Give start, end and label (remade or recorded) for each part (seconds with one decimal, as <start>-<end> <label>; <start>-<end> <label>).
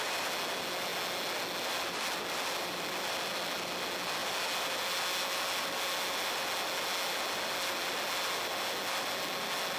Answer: 0.0-9.8 recorded